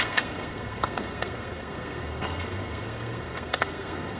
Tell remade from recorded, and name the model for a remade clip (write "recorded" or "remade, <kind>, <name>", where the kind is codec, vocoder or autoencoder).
remade, codec, SNAC